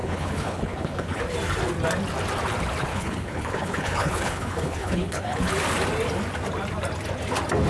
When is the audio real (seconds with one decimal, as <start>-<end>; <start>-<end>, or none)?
1.2-2.9; 5.5-7.7